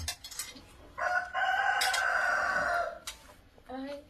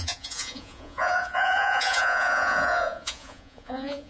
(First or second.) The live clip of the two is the first